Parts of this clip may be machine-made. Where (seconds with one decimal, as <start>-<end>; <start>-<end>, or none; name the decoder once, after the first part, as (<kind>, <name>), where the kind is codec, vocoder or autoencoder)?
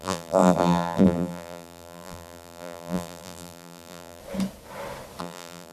0.0-4.2 (vocoder, BigVGAN v2); 5.2-5.7